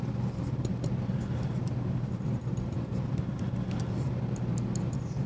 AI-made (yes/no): yes